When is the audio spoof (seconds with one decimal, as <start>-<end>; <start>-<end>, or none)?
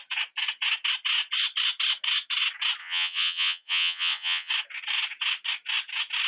2.8-4.5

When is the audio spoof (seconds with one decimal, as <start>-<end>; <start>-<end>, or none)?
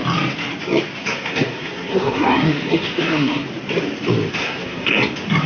1.1-3.5; 4.4-5.0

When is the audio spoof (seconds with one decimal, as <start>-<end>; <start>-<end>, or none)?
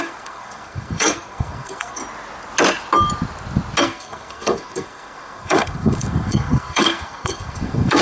0.0-2.0; 3.8-8.0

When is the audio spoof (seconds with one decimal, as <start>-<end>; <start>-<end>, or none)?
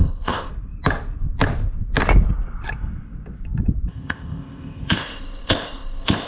0.0-0.5; 3.9-6.3